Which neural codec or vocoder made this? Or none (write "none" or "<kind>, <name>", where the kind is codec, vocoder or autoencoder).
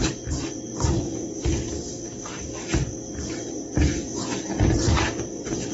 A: none